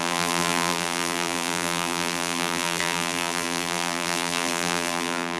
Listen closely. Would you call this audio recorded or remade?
remade